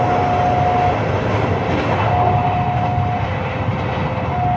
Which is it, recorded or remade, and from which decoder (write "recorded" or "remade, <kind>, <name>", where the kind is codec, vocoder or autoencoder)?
recorded